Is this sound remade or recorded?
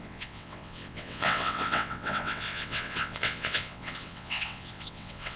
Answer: remade